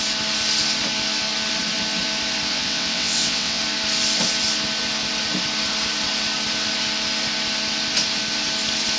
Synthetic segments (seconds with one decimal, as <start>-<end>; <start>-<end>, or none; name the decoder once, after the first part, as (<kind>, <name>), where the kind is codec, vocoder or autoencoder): 2.5-3.6 (vocoder, WaveNeXt)